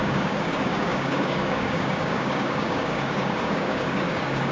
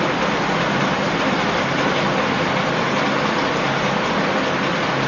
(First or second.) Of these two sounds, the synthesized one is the first